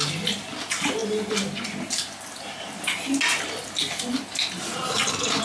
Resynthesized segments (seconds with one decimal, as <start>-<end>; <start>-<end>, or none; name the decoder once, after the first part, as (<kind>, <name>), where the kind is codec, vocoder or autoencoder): none